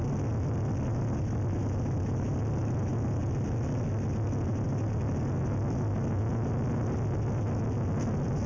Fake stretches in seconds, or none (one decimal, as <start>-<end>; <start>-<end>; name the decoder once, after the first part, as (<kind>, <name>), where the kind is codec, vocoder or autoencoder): none